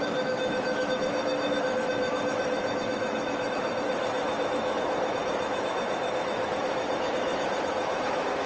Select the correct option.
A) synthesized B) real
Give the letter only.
A